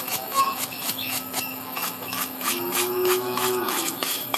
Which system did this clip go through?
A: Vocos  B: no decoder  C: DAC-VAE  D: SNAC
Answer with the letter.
C